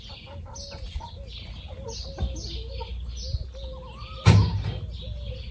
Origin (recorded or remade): recorded